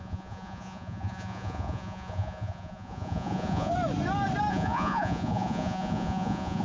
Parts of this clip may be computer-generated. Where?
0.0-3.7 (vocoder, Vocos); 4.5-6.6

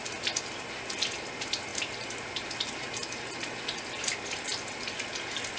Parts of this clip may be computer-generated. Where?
none

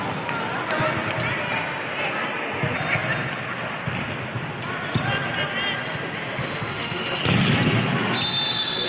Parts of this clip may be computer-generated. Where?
6.4-7.2 (autoencoder, DAC-VAE)

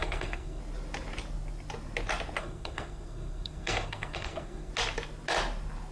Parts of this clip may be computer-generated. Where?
0.0-0.6 (codec, SNAC); 2.4-4.7

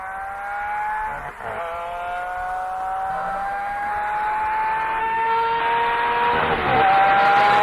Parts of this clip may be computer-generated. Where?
3.1-3.9 (autoencoder, DAC-VAE); 5.0-5.6

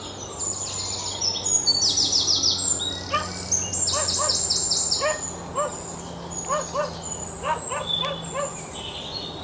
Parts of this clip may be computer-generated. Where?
none

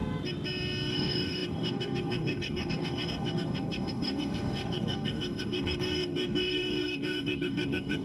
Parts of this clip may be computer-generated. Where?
0.9-8.0 (codec, DAC)